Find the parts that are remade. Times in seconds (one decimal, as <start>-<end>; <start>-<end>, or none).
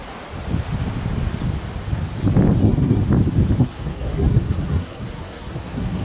2.6-3.0; 3.6-6.0